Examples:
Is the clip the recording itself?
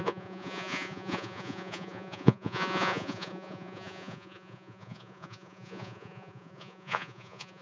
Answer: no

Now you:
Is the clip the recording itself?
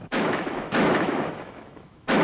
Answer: no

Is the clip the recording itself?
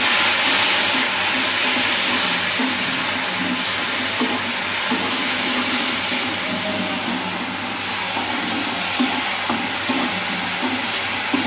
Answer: yes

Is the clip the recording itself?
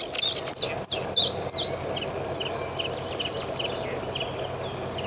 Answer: yes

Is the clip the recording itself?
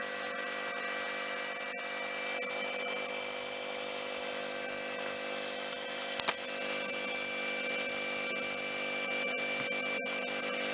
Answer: yes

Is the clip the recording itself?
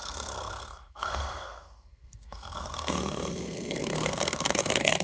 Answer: no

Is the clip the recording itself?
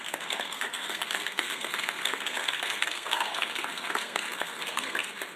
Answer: no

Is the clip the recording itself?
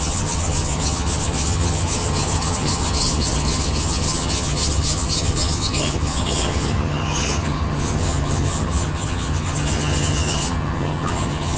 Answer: no